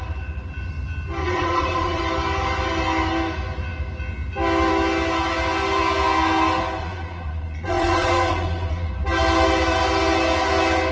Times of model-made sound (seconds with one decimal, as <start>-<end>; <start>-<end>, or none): 1.2-2.0; 6.8-8.9